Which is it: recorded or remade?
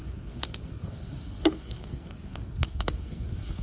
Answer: remade